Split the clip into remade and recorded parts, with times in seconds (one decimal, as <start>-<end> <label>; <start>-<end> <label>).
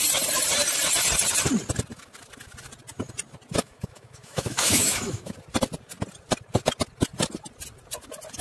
0.0-3.6 recorded; 3.6-5.3 remade; 5.3-8.4 recorded